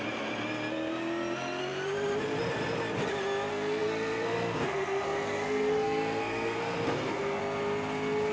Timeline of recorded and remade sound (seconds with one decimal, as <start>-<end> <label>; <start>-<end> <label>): 0.0-3.5 recorded; 3.5-7.4 remade; 7.4-8.3 recorded